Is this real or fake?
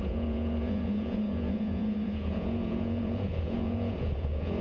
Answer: fake